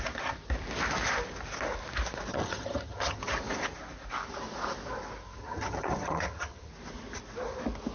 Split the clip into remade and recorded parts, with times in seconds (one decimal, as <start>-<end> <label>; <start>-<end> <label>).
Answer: 0.0-2.3 recorded; 2.3-3.2 remade; 3.2-5.4 recorded; 5.4-6.7 remade; 6.7-7.9 recorded